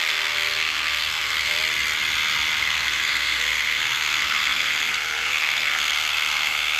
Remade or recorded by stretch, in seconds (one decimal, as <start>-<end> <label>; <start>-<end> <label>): 0.0-1.6 remade; 1.6-2.6 recorded; 2.6-6.8 remade